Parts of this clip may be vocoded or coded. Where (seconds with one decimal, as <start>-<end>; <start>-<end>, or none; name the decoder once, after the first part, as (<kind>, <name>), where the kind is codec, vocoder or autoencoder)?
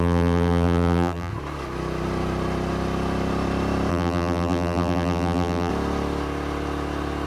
0.0-1.3 (vocoder, BigVGAN v2); 3.9-5.7